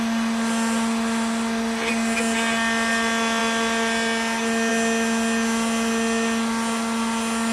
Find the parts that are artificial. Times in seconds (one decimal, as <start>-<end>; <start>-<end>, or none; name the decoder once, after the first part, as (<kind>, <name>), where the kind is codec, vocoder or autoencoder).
none